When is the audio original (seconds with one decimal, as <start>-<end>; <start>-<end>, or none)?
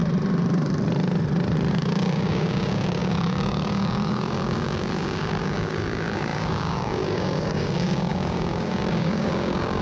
0.0-1.7